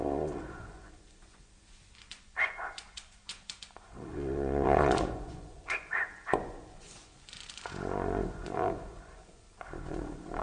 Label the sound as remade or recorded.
remade